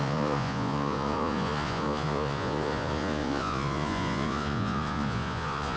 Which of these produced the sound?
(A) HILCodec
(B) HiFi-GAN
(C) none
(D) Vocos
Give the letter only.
D